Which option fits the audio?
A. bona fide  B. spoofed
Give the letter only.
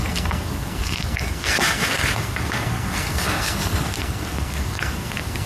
B